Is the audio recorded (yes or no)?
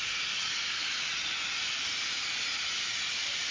yes